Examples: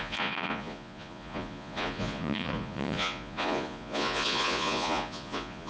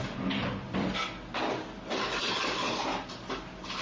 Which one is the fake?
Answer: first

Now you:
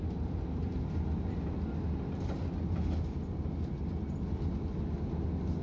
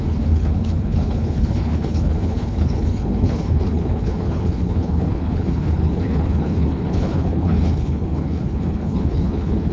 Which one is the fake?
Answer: second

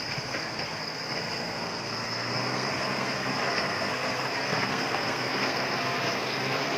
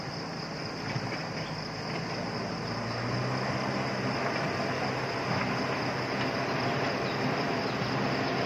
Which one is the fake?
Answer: first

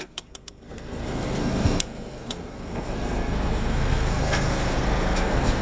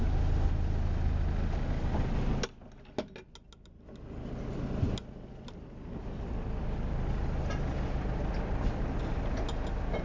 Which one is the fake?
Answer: first